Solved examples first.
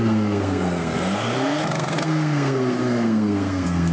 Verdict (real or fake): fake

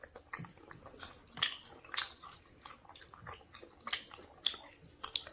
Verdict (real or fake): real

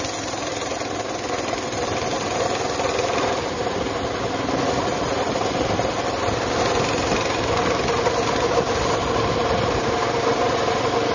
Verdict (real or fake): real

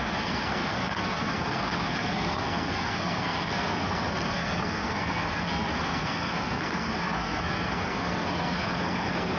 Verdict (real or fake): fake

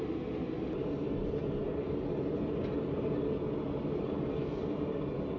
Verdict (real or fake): real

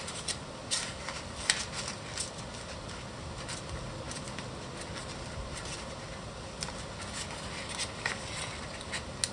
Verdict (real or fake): real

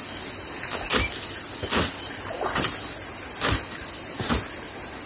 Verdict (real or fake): real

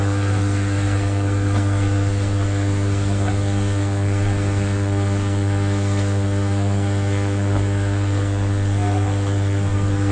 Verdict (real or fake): fake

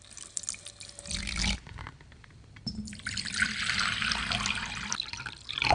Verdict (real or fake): real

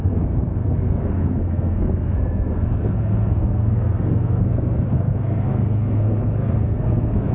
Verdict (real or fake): fake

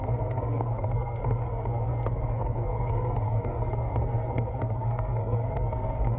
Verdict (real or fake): fake